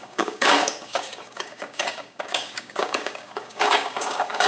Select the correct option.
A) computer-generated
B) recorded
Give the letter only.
A